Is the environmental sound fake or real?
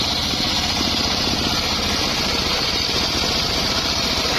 real